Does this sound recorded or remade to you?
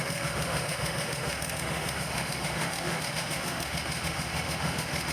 remade